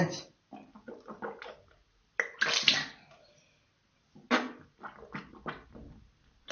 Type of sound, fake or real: real